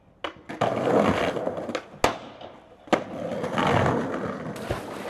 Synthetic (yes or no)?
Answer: no